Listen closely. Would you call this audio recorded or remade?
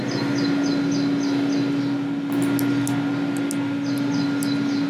recorded